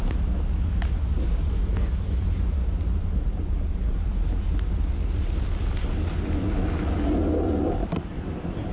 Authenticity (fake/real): real